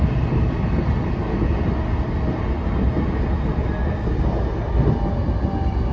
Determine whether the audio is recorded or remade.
recorded